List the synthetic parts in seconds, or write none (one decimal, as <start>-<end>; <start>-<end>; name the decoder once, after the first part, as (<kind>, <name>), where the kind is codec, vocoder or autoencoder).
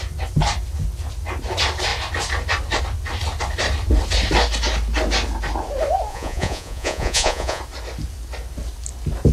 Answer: 6.1-7.6 (vocoder, Vocos)